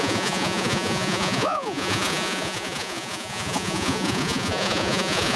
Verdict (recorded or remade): remade